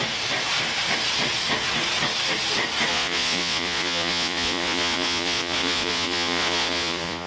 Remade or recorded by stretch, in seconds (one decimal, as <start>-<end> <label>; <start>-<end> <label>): 0.0-2.9 recorded; 2.9-7.3 remade